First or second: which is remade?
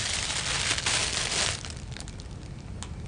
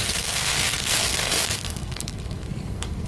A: second